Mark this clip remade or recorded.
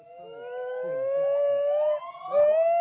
recorded